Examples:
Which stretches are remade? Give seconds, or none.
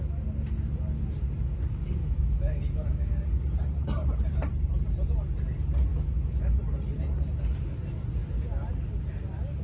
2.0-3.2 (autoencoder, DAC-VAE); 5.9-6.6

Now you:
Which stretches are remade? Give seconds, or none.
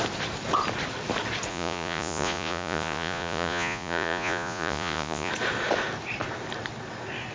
1.5-5.3 (vocoder, Vocos)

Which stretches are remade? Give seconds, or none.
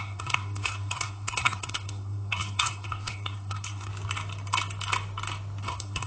0.0-3.9 (codec, SNAC); 5.6-6.1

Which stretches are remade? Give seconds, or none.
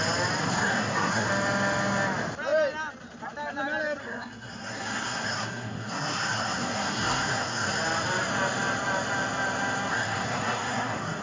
0.4-1.3 (codec, SNAC); 4.0-7.8; 9.9-11.2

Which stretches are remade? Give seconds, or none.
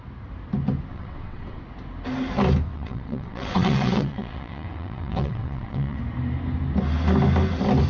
0.9-1.6 (vocoder, WaveNeXt); 2.7-6.0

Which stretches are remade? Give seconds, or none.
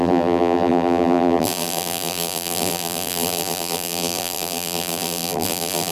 0.0-5.9 (vocoder, BigVGAN v2)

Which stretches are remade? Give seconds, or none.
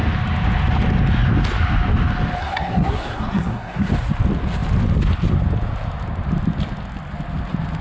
2.4-3.9 (codec, SNAC)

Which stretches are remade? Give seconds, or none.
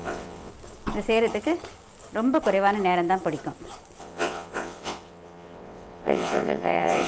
0.0-0.5 (vocoder, WaveNeXt); 4.0-7.1